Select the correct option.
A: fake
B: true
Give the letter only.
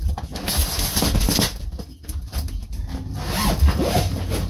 B